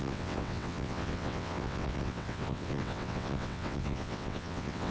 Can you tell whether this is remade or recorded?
remade